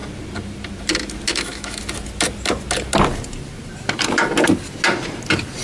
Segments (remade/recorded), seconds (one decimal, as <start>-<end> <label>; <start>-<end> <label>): 0.0-1.3 recorded; 1.3-1.8 remade; 1.8-5.6 recorded